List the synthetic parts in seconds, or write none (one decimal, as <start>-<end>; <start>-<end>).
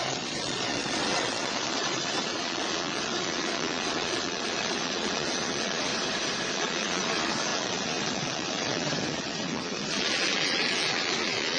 0.0-5.9; 6.5-11.6